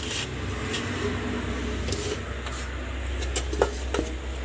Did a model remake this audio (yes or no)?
no